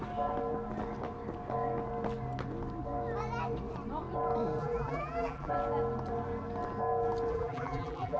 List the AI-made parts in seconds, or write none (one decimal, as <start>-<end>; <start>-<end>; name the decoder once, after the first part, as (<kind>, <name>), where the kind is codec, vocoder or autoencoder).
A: 4.6-5.5 (vocoder, BigVGAN v2); 7.3-8.2